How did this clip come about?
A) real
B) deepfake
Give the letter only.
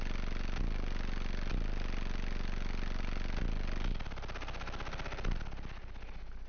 A